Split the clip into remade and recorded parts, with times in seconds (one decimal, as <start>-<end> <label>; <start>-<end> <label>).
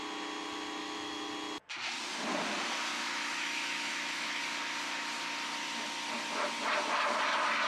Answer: 0.0-0.8 recorded; 0.8-1.3 remade; 1.3-2.9 recorded; 2.9-4.4 remade; 4.4-7.7 recorded